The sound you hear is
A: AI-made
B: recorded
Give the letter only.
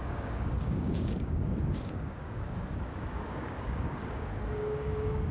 A